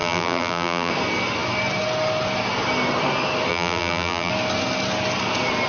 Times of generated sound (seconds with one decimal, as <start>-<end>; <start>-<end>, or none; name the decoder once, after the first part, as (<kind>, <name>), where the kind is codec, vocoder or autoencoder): 0.0-0.9 (vocoder, BigVGAN v2); 3.5-4.3